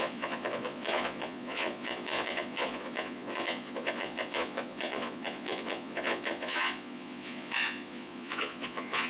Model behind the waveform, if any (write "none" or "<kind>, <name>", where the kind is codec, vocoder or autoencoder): vocoder, Vocos